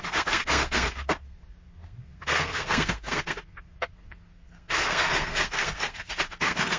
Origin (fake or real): fake